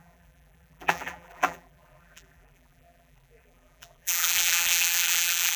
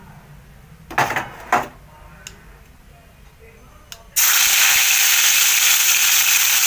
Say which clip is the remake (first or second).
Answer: first